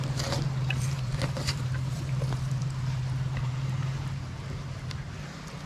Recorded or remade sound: remade